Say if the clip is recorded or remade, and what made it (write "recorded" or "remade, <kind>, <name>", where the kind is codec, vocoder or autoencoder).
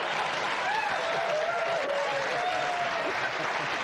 recorded